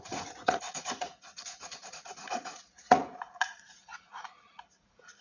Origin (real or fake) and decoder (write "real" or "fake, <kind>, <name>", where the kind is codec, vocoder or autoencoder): fake, vocoder, Vocos